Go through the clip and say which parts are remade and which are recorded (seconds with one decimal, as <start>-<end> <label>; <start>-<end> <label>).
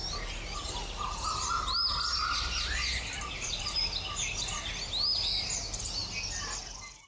0.0-7.1 recorded